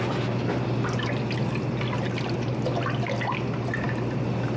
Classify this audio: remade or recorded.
recorded